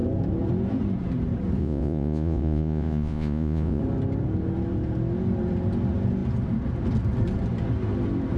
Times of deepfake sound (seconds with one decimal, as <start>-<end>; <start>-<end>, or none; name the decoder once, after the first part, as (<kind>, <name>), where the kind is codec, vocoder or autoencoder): 1.6-3.8 (vocoder, Vocos)